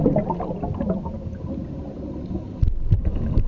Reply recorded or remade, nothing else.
recorded